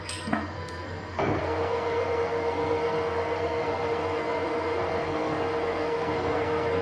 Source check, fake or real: fake